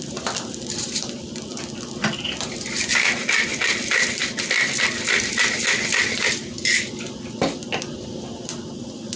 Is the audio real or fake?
fake